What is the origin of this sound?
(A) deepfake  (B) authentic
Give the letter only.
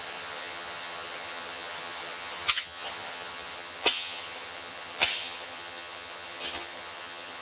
A